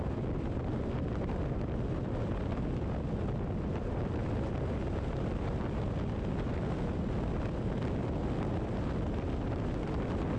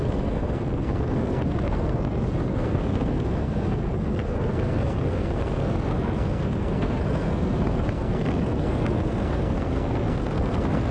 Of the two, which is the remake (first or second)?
second